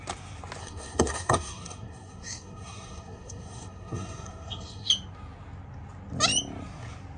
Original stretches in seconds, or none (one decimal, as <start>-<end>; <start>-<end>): 0.0-0.6; 4.9-7.2